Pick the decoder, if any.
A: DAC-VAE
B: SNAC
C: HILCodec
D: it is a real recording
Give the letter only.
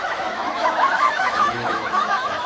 A